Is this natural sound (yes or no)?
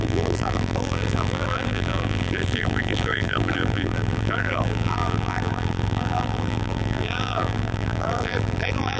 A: no